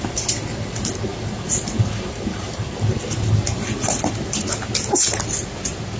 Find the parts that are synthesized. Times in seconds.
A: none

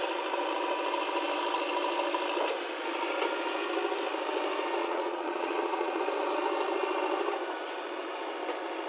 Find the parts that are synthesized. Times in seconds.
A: 4.8-6.0 (vocoder, Vocos)

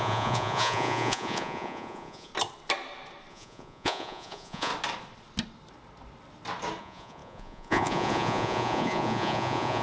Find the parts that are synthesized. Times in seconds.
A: 0.0-2.3 (vocoder, Vocos); 3.3-4.7; 6.8-9.8

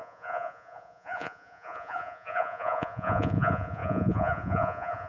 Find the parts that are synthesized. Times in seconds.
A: 0.0-5.1 (vocoder, Vocos)